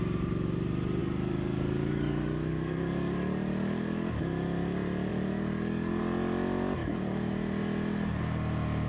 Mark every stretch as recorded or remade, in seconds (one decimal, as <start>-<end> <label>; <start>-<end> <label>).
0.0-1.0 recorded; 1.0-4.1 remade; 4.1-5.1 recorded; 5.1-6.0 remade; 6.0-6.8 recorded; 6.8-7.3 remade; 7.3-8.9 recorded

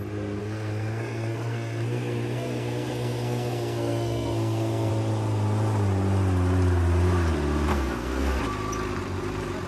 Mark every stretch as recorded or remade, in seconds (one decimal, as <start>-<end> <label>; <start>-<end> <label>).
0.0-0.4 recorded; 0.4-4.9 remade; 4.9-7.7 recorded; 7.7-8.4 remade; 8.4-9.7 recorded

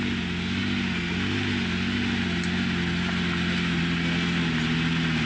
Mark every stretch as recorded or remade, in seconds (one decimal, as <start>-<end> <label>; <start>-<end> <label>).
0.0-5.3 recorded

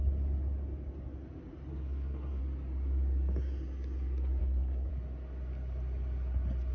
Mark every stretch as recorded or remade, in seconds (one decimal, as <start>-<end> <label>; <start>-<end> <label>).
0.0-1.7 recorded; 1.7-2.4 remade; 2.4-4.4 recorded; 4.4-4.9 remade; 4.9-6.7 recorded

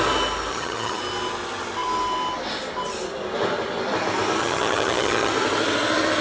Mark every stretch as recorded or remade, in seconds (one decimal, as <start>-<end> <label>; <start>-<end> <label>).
0.0-0.5 recorded; 0.5-1.0 remade; 1.0-4.4 recorded; 4.4-5.3 remade; 5.3-6.2 recorded